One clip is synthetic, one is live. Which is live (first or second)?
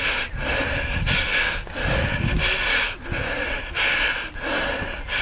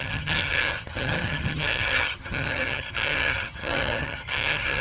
first